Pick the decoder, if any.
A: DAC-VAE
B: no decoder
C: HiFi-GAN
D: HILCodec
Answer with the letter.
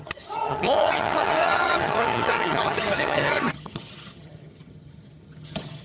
C